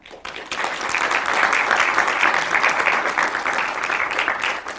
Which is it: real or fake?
real